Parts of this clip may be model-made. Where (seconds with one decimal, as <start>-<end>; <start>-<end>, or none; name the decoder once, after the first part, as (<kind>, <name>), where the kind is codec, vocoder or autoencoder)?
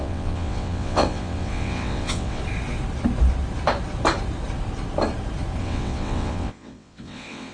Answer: 0.0-2.4 (vocoder, WaveNeXt); 5.6-7.5